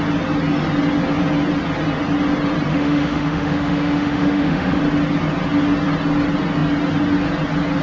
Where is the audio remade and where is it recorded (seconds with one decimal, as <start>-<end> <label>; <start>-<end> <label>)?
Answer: 0.0-2.7 recorded; 2.7-4.8 remade; 4.8-7.8 recorded